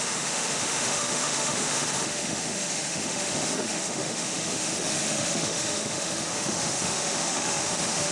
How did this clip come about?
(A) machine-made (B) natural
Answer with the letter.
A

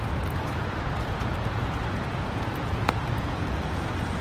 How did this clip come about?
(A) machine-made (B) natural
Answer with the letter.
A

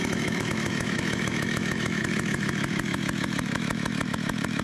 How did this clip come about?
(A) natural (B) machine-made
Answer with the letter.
B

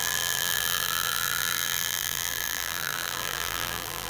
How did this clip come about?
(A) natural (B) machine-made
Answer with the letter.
B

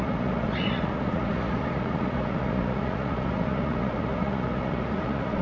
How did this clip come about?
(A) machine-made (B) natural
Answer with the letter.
A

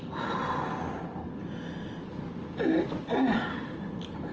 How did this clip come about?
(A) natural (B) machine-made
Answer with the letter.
A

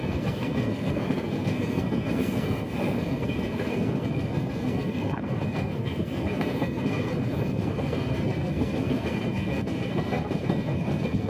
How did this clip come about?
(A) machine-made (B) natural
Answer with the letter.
A